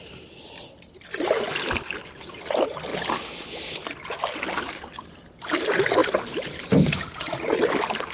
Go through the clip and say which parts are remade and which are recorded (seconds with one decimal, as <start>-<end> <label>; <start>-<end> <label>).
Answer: 0.0-2.9 recorded; 2.9-3.4 remade; 3.4-6.0 recorded; 6.0-8.1 remade

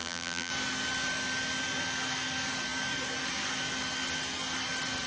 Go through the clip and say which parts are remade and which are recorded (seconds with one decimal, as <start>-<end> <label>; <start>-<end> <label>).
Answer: 0.0-0.5 remade; 0.5-5.1 recorded

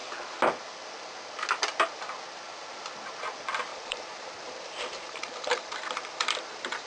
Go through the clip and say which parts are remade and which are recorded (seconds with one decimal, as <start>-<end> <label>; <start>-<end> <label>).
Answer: 0.0-3.7 recorded; 3.7-6.9 remade

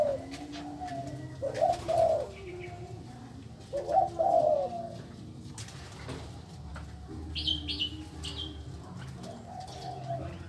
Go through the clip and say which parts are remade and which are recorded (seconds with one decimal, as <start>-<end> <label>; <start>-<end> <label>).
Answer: 0.0-10.5 recorded